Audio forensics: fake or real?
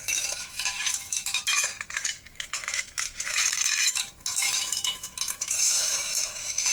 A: fake